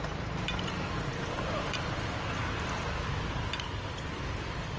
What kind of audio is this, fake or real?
real